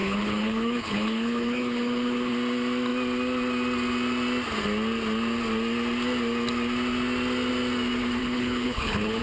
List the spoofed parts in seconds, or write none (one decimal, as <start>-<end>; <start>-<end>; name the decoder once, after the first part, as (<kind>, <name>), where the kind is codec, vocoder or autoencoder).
0.0-2.3 (codec, HILCodec); 8.2-9.2